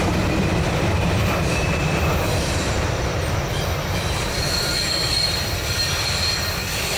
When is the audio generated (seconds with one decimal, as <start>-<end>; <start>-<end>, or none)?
0.0-3.2; 4.3-7.0